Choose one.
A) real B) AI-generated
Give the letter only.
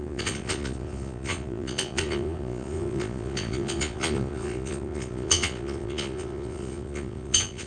B